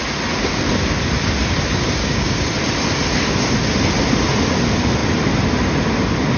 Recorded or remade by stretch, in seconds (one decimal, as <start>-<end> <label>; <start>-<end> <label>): 0.0-2.0 recorded; 2.0-2.5 remade; 2.5-6.4 recorded